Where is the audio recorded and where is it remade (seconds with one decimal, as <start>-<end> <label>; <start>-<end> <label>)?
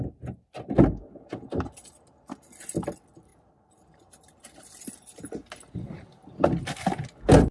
0.0-3.3 recorded; 3.3-5.7 remade; 5.7-7.5 recorded